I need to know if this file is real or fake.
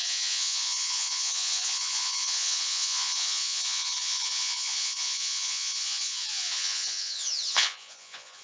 fake